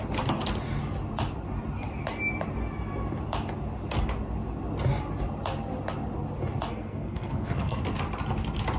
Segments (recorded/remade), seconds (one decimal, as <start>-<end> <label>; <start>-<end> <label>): 0.0-6.7 recorded; 6.7-7.8 remade; 7.8-8.8 recorded